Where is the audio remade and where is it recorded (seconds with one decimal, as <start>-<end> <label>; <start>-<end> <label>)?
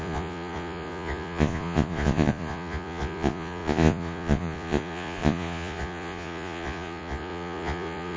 0.0-8.2 remade